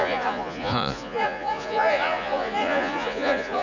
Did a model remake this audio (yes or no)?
yes